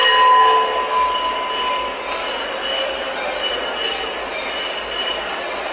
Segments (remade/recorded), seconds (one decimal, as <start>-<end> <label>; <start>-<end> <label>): 0.0-5.7 recorded